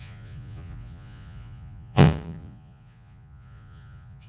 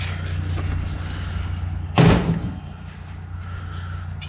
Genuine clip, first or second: second